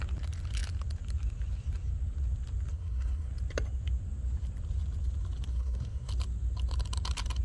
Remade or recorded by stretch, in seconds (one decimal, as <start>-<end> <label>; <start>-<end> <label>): 0.0-2.7 recorded; 2.7-3.3 remade; 3.3-5.5 recorded; 5.5-6.1 remade; 6.1-7.4 recorded